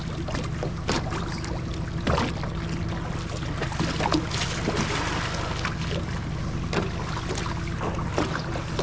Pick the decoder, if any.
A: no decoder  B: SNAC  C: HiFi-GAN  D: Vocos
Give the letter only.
A